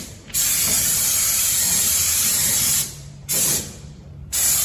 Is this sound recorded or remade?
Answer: remade